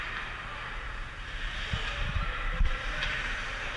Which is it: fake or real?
fake